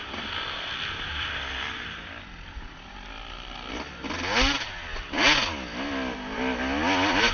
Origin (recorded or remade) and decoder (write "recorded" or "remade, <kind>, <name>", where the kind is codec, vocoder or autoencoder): recorded